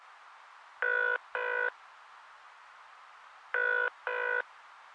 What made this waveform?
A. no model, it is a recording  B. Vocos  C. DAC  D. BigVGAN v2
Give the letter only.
A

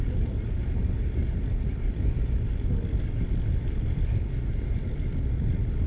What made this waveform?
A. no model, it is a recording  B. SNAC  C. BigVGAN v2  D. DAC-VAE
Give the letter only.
A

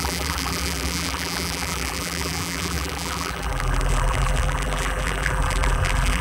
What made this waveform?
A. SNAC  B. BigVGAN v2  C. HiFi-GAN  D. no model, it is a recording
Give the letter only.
B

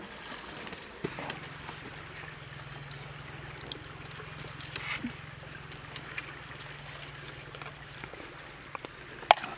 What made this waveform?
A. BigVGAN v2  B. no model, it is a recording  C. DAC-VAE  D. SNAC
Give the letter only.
B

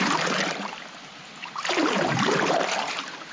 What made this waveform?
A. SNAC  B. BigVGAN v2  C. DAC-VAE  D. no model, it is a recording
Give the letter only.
B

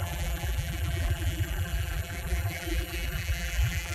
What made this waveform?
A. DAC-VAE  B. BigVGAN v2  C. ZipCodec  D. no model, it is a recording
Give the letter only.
B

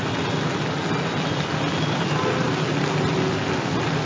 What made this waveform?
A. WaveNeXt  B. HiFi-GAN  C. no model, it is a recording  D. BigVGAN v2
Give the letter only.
C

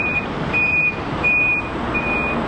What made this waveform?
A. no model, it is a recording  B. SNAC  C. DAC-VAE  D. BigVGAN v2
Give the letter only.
D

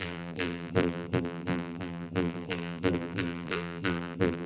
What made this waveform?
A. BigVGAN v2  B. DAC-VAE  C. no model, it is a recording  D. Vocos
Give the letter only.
A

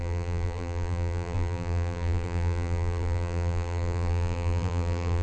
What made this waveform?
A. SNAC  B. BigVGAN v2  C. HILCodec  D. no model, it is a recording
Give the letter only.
B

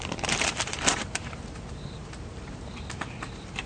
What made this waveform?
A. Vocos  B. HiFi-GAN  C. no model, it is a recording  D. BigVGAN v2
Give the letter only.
D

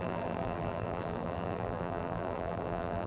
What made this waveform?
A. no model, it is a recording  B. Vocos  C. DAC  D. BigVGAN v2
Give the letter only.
D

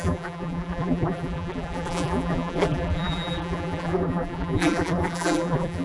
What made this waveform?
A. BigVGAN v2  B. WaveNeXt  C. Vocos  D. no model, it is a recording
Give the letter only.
A